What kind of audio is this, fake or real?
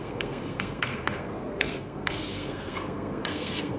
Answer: fake